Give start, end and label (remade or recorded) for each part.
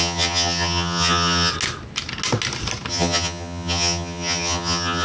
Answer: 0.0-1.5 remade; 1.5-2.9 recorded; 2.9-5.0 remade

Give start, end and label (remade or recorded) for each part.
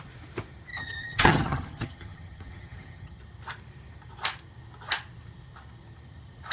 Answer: 0.0-0.7 recorded; 0.7-3.2 remade; 3.2-6.5 recorded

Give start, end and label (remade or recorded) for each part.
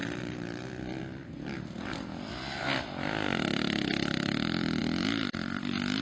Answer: 0.0-6.0 recorded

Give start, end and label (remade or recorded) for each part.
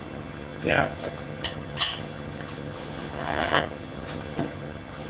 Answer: 0.0-5.1 remade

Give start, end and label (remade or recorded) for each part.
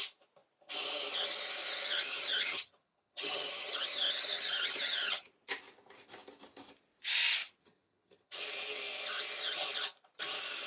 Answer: 0.0-2.1 recorded; 2.1-5.3 remade; 5.3-7.4 recorded; 7.4-8.4 remade; 8.4-10.7 recorded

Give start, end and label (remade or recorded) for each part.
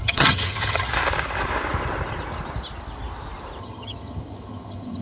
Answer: 0.0-0.9 remade; 0.9-3.6 recorded; 3.6-5.0 remade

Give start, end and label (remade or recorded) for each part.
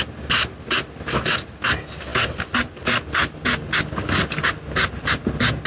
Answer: 0.0-5.7 recorded